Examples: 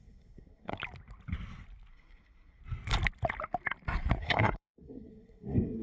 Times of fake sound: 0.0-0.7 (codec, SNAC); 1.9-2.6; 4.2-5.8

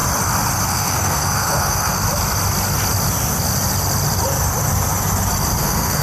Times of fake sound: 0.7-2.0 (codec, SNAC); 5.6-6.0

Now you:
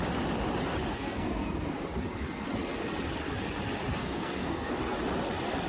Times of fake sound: 0.9-1.8 (codec, SNAC); 4.0-4.7